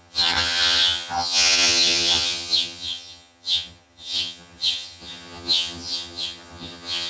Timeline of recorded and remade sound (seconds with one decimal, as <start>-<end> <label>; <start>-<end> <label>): 0.0-7.1 remade